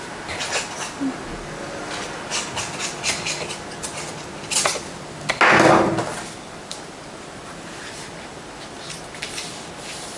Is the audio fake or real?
real